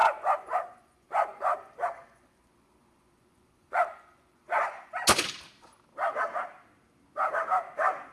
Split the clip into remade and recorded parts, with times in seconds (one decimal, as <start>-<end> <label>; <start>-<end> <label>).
0.0-4.9 remade; 4.9-8.1 recorded